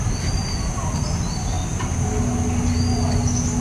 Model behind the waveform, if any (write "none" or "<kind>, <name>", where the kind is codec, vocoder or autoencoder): none